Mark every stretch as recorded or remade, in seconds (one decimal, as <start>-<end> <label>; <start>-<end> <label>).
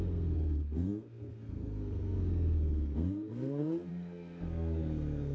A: 0.0-5.3 remade